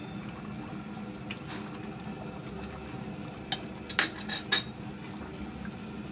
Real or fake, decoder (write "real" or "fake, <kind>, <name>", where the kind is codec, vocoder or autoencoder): real